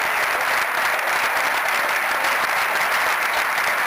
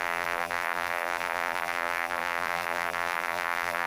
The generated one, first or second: second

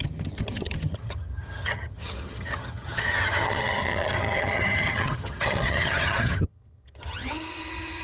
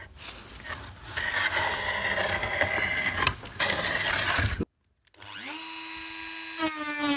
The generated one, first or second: first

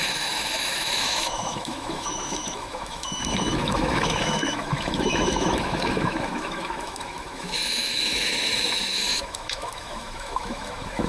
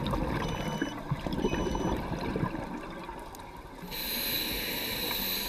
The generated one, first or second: first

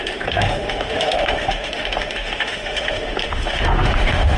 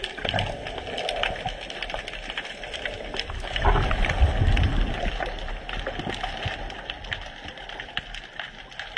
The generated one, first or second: first